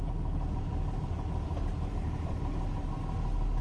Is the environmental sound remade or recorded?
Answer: recorded